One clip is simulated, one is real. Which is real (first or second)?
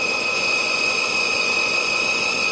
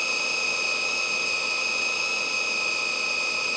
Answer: second